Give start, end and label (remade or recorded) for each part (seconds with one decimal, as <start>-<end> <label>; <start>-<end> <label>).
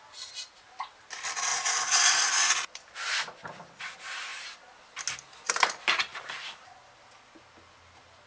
0.0-1.5 recorded; 1.5-2.5 remade; 2.5-6.1 recorded; 6.1-6.6 remade; 6.6-8.3 recorded